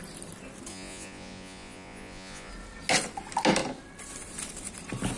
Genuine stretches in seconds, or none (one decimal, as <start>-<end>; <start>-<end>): 0.0-0.7; 2.5-5.2